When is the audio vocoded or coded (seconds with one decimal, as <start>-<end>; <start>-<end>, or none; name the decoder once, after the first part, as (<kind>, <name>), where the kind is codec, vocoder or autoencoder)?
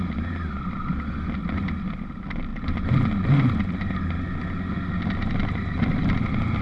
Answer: none